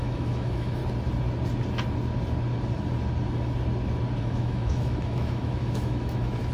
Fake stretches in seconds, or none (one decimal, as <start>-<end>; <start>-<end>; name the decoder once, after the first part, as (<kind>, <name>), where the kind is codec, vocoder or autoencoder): 0.0-0.8 (autoencoder, DAC-VAE); 4.2-6.5